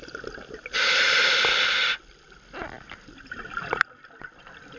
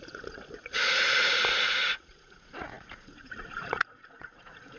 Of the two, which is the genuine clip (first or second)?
first